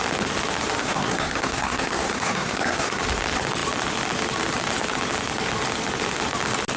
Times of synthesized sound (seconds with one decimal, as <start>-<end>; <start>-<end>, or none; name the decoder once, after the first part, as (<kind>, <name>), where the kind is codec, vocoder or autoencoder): 0.8-3.0 (codec, SNAC)